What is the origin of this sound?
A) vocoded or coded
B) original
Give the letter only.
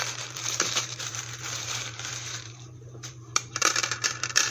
A